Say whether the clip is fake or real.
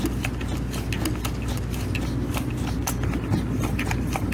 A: real